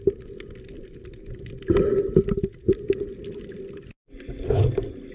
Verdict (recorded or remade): recorded